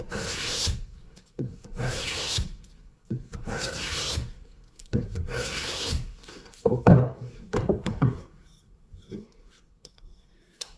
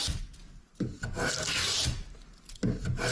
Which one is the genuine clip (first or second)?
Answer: second